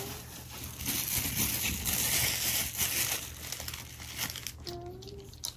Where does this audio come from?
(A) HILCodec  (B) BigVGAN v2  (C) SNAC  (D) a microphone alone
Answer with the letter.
D